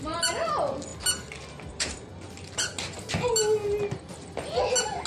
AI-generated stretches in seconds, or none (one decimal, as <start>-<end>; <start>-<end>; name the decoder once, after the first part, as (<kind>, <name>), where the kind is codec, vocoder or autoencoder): none